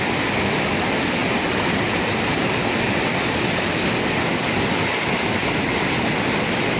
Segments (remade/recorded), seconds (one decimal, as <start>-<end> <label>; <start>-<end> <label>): 0.0-6.8 recorded